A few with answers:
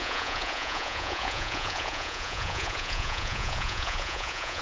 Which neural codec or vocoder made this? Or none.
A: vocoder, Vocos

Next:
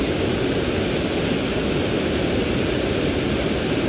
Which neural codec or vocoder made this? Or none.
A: none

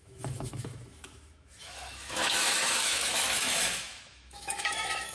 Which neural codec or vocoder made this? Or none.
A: autoencoder, DAC-VAE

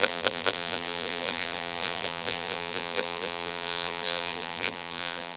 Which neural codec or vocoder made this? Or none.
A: vocoder, BigVGAN v2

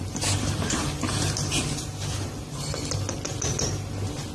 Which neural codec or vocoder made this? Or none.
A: none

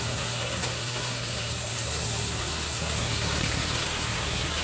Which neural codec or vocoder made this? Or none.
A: codec, SNAC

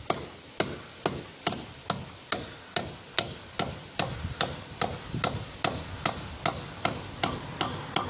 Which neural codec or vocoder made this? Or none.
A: none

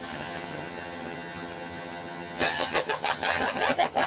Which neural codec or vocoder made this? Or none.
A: vocoder, HiFi-GAN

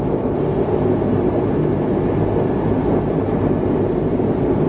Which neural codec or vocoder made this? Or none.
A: none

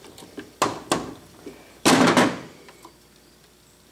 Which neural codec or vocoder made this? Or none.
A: none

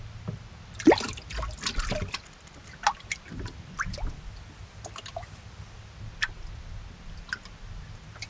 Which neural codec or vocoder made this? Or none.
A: none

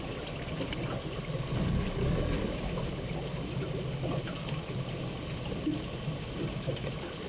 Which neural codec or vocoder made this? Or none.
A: none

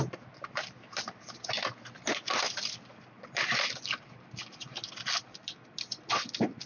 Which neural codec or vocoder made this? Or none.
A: none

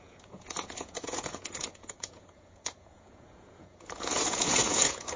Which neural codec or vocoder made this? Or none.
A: vocoder, Vocos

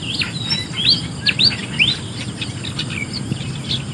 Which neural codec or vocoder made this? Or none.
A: none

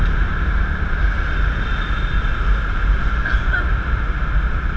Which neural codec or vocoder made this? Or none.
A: none